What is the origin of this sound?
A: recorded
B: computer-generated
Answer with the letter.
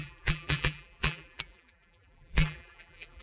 B